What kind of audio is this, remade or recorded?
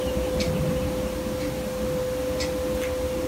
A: recorded